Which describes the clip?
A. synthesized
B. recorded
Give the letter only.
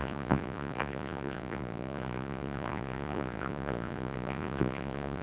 A